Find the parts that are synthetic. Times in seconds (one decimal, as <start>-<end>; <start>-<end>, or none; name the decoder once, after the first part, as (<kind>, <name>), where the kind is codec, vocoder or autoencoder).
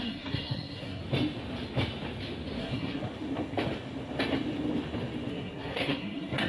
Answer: 0.0-1.0 (codec, SNAC); 2.6-3.0; 5.3-6.5